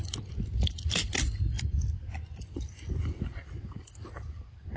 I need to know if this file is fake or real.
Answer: real